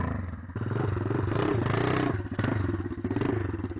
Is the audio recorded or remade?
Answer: recorded